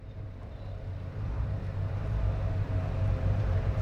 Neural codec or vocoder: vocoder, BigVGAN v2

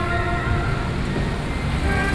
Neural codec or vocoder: none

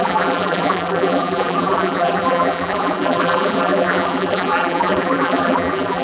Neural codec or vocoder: vocoder, BigVGAN v2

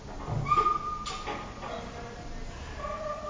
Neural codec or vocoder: none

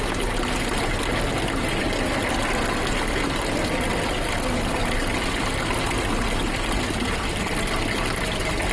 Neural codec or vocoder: none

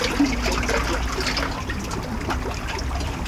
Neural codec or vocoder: none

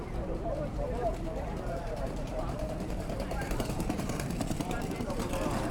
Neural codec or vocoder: vocoder, BigVGAN v2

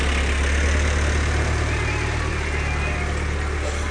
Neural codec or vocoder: none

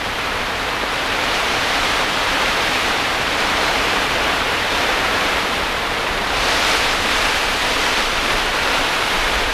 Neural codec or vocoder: vocoder, BigVGAN v2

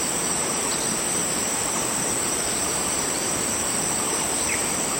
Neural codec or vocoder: vocoder, BigVGAN v2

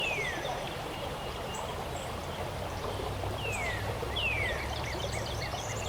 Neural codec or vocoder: vocoder, BigVGAN v2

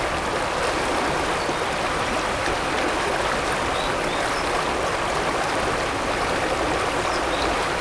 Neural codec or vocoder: none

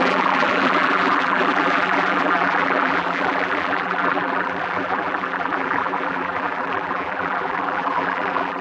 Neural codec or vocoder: vocoder, BigVGAN v2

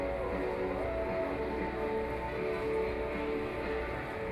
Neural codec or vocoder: none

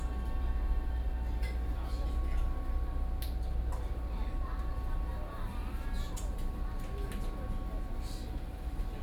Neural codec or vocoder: none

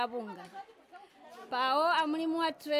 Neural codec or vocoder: none